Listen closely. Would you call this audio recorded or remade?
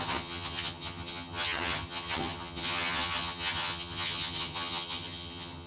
remade